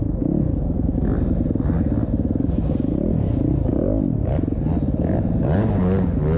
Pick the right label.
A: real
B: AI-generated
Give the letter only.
A